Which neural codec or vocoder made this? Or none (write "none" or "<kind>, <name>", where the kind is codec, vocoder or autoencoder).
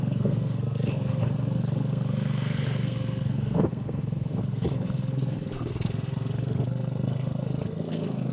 codec, SNAC